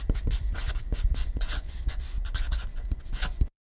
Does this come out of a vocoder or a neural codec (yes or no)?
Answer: yes